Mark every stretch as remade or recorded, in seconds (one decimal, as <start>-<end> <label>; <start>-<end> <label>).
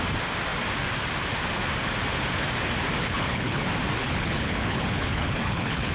0.0-3.0 recorded; 3.0-3.6 remade; 3.6-4.0 recorded; 4.0-5.9 remade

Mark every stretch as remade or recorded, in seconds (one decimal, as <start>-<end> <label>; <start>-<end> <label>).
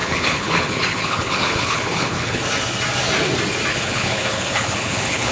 0.0-2.4 remade; 2.4-3.7 recorded; 3.7-5.3 remade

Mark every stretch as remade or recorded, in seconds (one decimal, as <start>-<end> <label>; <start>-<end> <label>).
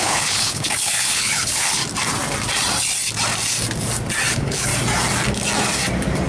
0.0-1.8 remade; 1.8-4.3 recorded; 4.3-4.7 remade; 4.7-6.3 recorded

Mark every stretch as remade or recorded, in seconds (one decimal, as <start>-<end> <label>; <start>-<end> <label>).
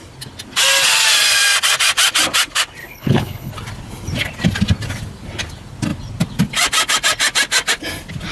0.0-2.8 recorded; 2.8-3.5 remade; 3.5-8.3 recorded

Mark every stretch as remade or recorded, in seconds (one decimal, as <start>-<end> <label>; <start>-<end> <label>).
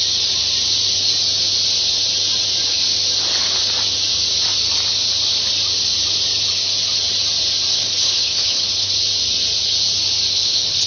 0.0-7.7 recorded; 7.7-8.9 remade; 8.9-10.3 recorded; 10.3-10.9 remade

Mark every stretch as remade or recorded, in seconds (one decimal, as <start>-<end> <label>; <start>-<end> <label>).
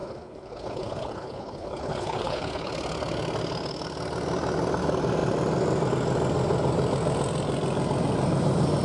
0.0-2.7 remade; 2.7-8.8 recorded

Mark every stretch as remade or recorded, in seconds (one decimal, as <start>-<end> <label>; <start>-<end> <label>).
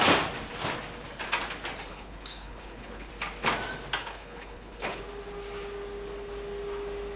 0.0-1.9 recorded; 1.9-3.1 remade; 3.1-4.0 recorded; 4.0-5.0 remade; 5.0-7.2 recorded